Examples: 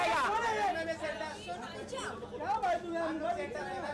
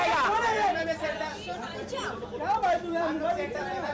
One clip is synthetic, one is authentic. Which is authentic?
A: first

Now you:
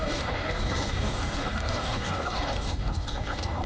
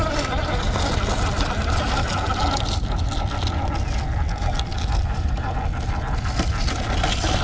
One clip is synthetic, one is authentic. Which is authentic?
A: second